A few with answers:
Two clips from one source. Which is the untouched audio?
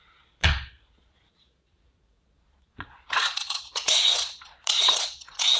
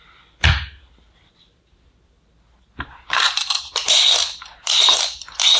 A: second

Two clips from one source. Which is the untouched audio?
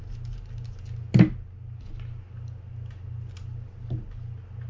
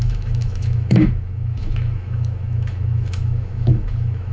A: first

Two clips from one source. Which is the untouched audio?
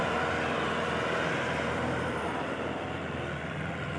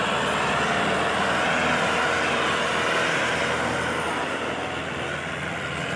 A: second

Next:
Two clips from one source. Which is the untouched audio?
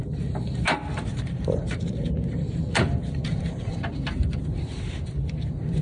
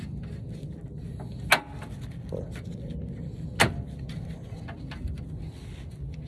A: second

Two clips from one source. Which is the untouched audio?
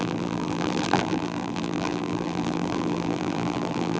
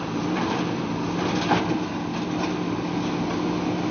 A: second